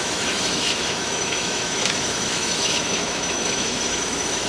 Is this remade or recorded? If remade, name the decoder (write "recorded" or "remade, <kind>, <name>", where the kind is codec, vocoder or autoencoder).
remade, autoencoder, DAC-VAE